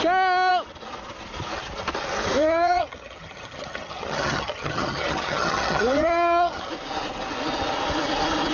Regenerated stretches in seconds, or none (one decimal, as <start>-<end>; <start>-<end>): 2.4-6.7